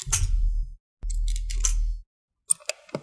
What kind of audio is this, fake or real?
real